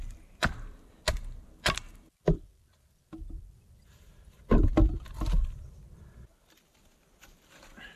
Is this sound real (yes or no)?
yes